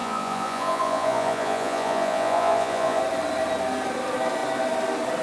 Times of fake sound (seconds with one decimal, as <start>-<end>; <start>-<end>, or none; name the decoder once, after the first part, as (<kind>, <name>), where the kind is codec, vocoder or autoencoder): 0.0-3.0 (vocoder, Vocos)